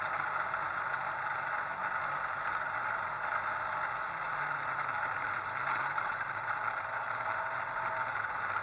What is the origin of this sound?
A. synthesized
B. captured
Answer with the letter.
B